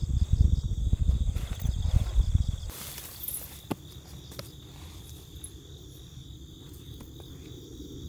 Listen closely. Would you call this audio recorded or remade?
recorded